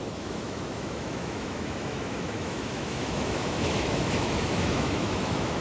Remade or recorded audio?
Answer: remade